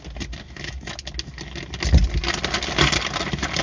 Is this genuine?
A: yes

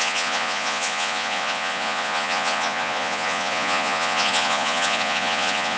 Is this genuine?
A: no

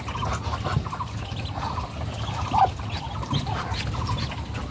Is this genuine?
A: yes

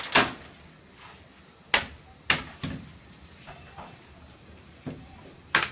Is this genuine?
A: yes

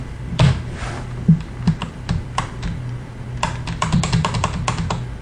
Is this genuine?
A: no